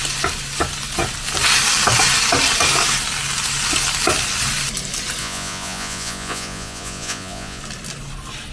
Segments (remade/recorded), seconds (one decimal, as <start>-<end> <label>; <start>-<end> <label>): 0.0-5.2 recorded; 5.2-7.6 remade; 7.6-8.5 recorded